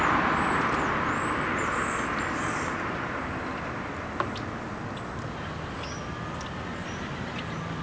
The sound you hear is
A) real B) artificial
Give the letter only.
A